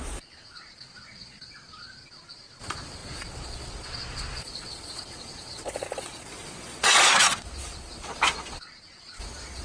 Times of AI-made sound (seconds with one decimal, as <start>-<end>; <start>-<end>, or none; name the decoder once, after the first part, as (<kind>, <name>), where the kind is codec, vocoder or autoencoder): 0.0-9.6 (vocoder, Vocos)